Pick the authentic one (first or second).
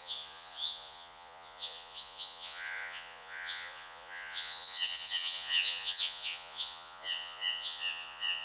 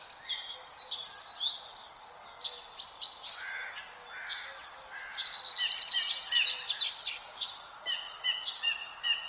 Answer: second